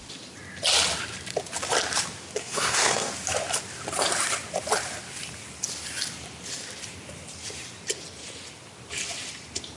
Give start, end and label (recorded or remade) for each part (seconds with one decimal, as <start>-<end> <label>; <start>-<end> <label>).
0.0-2.4 recorded; 2.4-3.1 remade; 3.1-9.8 recorded